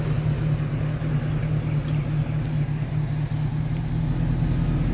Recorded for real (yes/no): yes